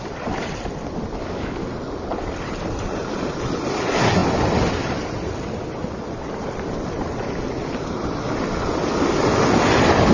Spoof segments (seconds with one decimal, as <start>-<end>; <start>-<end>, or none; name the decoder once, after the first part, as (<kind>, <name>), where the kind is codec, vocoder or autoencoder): 1.2-1.7 (codec, DAC)